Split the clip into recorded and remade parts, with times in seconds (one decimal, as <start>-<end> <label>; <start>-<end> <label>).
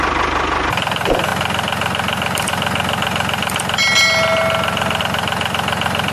0.0-6.1 recorded